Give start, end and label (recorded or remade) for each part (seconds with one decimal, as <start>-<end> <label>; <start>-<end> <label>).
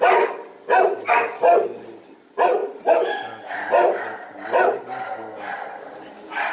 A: 0.0-6.5 recorded